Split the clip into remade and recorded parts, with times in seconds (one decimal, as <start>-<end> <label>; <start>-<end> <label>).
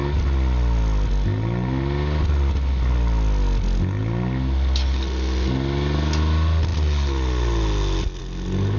0.0-8.8 recorded